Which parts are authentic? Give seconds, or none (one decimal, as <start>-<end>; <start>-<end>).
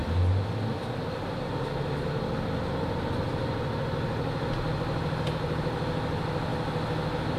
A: 0.0-7.4